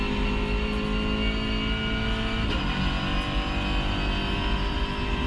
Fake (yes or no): no